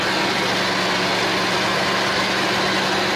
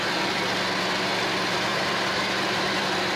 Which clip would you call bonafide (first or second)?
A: first